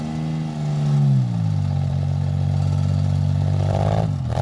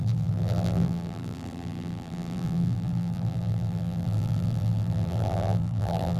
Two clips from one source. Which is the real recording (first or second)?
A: first